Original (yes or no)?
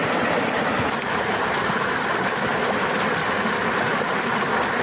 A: yes